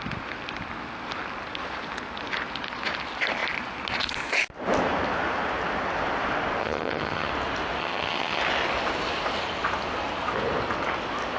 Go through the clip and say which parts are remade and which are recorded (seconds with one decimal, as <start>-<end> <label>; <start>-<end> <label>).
0.0-6.6 recorded; 6.6-7.3 remade; 7.3-7.8 recorded; 7.8-8.4 remade; 8.4-11.4 recorded

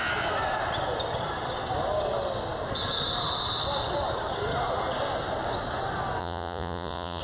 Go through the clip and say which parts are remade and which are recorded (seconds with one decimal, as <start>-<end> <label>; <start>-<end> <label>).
0.0-6.2 recorded; 6.2-7.2 remade

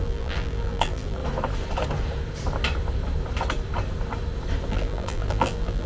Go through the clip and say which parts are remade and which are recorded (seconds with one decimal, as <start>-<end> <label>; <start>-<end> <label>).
0.0-1.2 remade; 1.2-4.7 recorded; 4.7-5.9 remade